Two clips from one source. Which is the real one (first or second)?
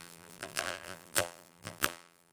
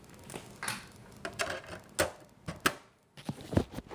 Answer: second